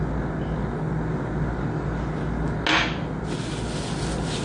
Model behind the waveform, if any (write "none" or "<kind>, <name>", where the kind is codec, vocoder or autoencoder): none